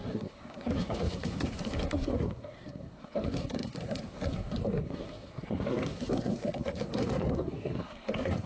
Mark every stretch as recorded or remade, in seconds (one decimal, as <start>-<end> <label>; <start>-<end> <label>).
0.0-8.5 remade